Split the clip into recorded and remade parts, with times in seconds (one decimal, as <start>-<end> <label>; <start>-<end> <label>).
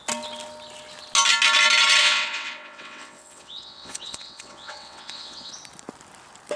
0.0-2.0 recorded; 2.0-5.5 remade; 5.5-6.6 recorded